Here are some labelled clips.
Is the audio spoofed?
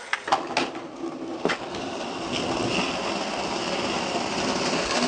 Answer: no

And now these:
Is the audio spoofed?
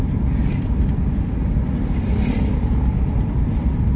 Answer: no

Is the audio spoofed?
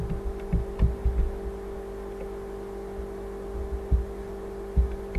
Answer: no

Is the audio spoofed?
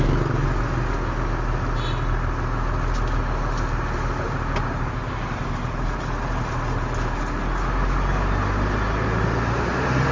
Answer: no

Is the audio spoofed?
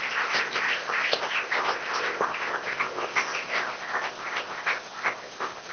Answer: yes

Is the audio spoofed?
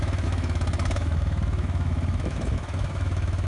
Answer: yes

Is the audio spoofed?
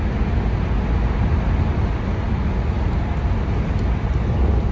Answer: no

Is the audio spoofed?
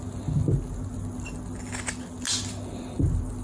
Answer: no